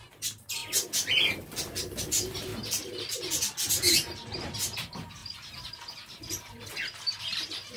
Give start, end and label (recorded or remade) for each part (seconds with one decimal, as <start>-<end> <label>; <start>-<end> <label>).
0.0-0.6 remade; 0.6-2.0 recorded; 2.0-2.5 remade; 2.5-3.9 recorded; 3.9-5.2 remade; 5.2-7.2 recorded; 7.2-7.8 remade